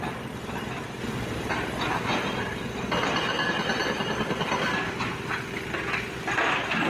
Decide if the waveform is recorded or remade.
recorded